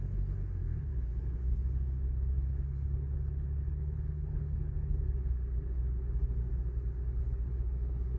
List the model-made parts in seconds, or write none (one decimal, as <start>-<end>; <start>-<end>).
0.0-6.4; 7.2-8.2